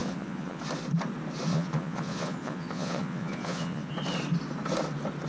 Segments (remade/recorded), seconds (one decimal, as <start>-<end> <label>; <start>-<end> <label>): 0.0-0.6 remade; 0.6-1.5 recorded; 1.5-3.9 remade; 3.9-5.3 recorded